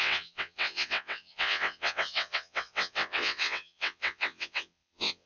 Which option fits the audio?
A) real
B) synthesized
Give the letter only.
B